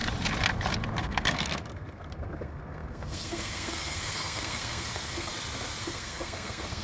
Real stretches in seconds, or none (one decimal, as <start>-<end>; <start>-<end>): 0.0-1.0; 5.3-5.8